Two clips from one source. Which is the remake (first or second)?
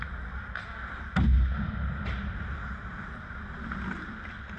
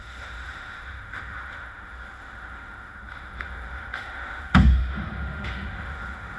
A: second